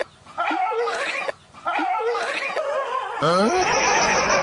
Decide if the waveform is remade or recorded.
remade